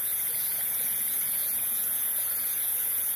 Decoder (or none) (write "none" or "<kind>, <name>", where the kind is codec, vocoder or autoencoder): vocoder, Vocos